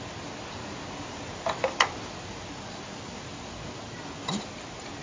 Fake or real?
real